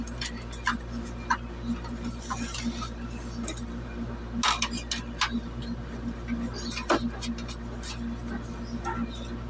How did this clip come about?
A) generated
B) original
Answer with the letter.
B